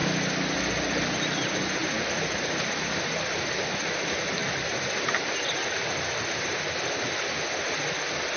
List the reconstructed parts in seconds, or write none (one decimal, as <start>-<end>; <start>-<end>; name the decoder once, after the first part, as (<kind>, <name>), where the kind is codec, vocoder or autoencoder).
none